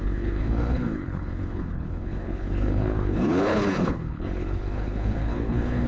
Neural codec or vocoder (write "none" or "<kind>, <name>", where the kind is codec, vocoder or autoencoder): codec, HILCodec